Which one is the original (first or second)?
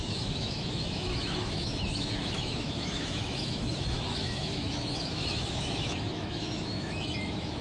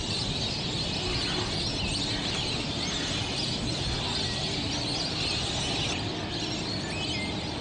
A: second